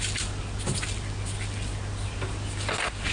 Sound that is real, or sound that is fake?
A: real